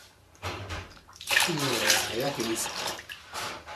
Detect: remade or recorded remade